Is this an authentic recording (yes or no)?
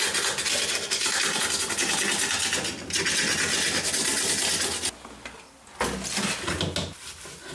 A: yes